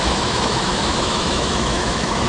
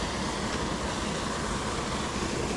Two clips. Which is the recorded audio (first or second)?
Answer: second